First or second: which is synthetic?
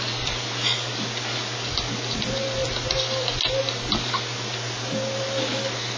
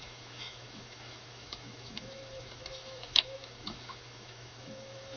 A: second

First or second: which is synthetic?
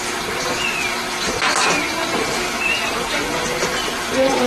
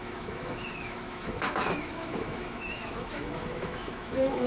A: second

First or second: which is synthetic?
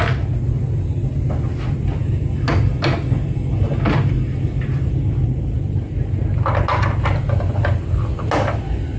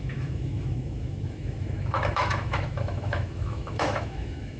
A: second